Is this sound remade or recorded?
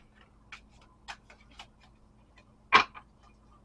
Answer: recorded